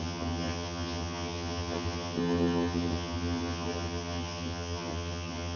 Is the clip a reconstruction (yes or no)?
yes